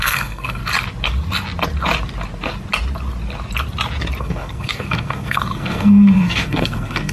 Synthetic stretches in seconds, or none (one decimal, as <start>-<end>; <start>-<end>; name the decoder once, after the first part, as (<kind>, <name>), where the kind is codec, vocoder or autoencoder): 0.0-0.6 (codec, SNAC); 4.2-7.1